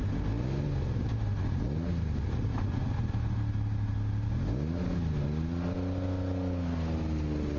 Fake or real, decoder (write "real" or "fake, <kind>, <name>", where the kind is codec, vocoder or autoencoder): real